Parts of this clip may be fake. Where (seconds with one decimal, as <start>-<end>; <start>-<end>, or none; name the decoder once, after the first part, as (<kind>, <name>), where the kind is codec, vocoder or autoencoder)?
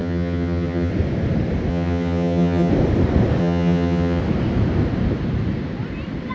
0.0-0.9 (vocoder, HiFi-GAN); 1.7-2.7; 3.4-4.2